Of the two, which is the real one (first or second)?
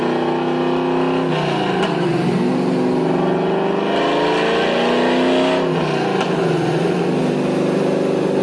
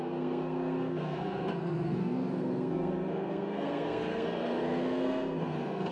first